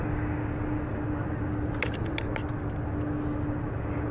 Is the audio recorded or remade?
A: recorded